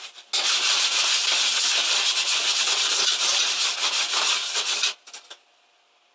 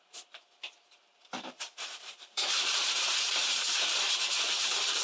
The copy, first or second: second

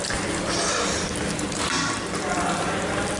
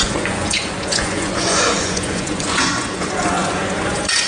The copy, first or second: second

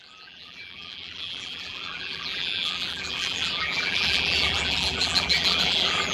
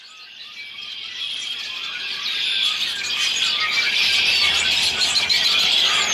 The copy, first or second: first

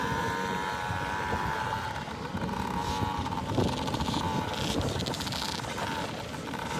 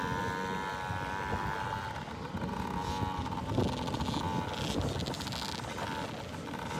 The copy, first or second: first